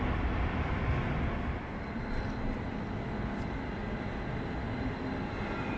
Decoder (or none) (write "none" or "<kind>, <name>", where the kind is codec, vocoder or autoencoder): none